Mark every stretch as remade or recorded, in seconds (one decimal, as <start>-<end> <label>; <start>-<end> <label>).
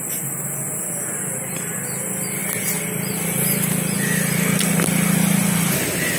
0.0-6.2 recorded